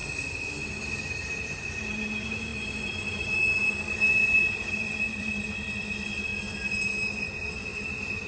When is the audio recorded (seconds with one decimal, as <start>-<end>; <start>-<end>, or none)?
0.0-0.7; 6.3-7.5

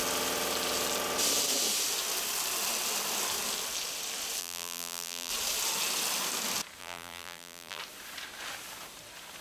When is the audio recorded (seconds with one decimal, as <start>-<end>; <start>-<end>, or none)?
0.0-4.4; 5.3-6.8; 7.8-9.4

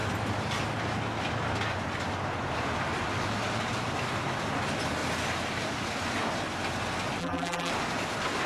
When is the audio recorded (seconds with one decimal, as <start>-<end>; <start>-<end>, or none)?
0.0-7.2; 7.7-8.5

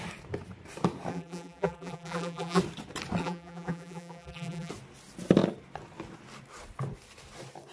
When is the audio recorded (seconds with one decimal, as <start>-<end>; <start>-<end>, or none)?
0.0-1.1; 2.6-3.2; 4.7-7.7

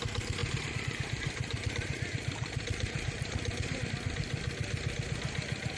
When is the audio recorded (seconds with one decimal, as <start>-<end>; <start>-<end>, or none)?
0.0-0.4; 3.9-5.8

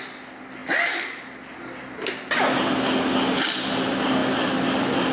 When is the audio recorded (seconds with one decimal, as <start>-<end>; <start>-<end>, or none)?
0.0-5.1

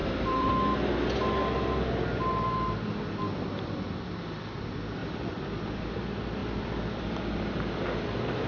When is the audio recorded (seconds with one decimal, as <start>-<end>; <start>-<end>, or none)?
0.5-5.0; 5.9-6.4; 7.6-8.5